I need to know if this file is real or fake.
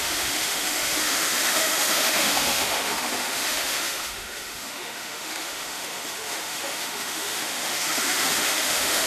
fake